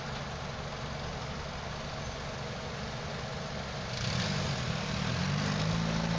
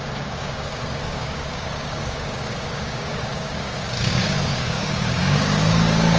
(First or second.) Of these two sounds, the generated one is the second